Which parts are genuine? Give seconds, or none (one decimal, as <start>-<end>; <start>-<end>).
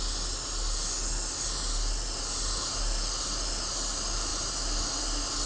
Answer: 0.0-5.5